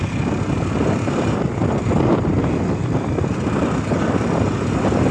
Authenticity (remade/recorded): recorded